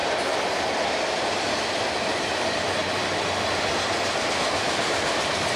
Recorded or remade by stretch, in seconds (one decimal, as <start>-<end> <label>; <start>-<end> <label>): 0.0-2.8 remade; 2.8-4.8 recorded; 4.8-5.6 remade